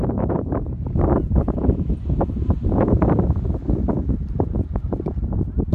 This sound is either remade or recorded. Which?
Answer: remade